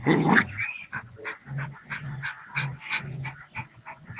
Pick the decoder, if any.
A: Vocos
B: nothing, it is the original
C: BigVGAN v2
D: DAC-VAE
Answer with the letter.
A